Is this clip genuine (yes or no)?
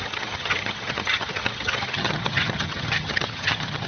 no